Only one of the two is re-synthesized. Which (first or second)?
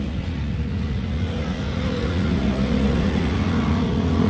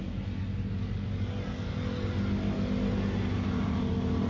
first